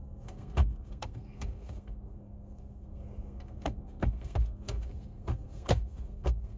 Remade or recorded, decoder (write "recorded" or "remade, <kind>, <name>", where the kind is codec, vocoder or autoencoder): remade, codec, SNAC